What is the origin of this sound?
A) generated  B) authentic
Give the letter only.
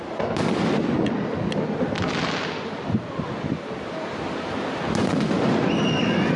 B